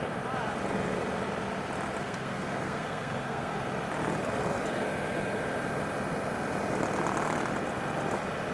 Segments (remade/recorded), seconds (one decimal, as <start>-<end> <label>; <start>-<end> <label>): 0.0-2.0 recorded; 2.0-3.7 remade; 3.7-8.5 recorded